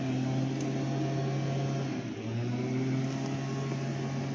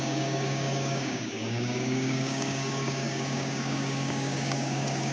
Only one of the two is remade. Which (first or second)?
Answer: second